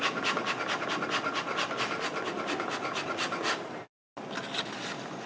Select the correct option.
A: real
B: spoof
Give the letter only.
A